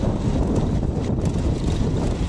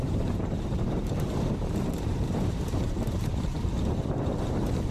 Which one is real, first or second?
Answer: first